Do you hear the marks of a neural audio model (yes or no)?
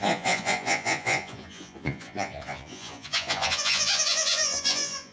yes